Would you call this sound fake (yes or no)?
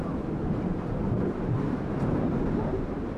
yes